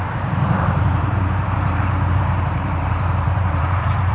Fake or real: fake